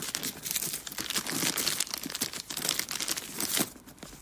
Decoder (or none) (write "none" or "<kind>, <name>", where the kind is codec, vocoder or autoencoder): none